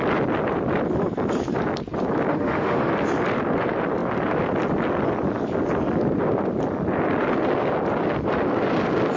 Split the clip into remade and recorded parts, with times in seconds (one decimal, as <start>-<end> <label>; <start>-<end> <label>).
0.0-2.3 recorded; 2.3-2.9 remade; 2.9-9.2 recorded